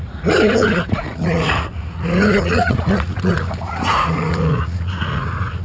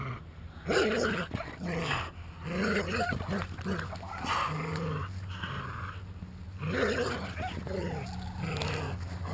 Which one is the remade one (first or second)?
first